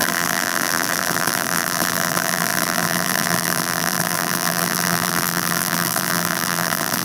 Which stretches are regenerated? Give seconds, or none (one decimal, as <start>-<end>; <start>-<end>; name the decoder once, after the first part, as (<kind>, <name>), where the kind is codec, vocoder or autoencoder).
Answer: 0.0-7.0 (vocoder, BigVGAN v2)